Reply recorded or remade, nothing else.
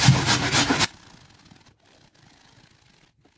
recorded